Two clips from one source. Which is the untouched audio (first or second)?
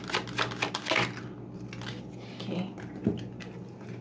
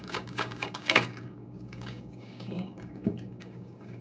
first